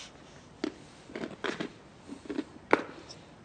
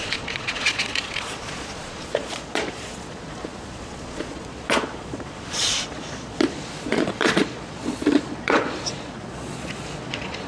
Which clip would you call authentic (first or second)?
first